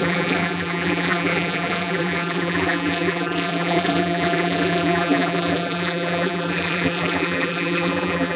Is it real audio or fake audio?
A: fake